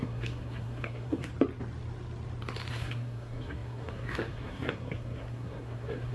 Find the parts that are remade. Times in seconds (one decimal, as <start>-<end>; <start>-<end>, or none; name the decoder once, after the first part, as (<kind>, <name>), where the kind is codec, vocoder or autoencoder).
0.0-1.3 (codec, SNAC); 2.7-6.1